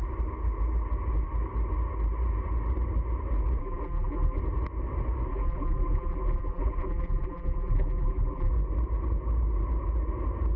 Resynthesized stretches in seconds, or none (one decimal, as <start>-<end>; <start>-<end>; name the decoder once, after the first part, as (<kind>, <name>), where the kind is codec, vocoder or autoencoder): 3.6-4.4 (vocoder, BigVGAN v2); 5.3-8.5